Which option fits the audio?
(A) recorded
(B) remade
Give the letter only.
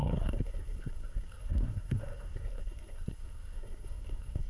B